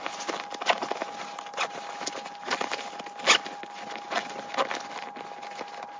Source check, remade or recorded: recorded